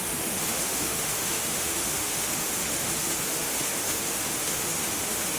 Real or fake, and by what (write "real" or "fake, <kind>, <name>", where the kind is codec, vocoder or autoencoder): fake, autoencoder, DAC-VAE